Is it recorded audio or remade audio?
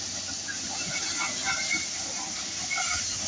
recorded